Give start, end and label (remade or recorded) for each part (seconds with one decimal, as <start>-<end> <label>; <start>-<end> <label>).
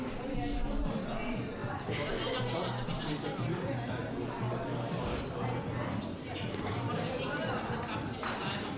0.0-8.8 recorded